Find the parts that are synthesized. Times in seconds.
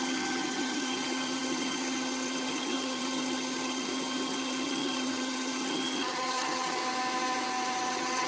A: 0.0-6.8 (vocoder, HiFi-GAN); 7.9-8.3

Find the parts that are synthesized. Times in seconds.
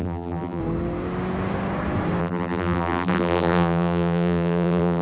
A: 0.0-0.6 (vocoder, BigVGAN v2); 2.2-5.0